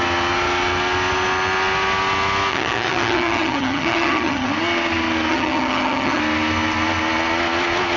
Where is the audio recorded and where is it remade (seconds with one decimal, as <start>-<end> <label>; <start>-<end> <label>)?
0.0-2.5 recorded; 2.5-4.5 remade; 4.5-5.3 recorded; 5.3-6.2 remade; 6.2-8.0 recorded